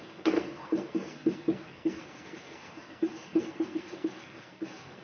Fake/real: fake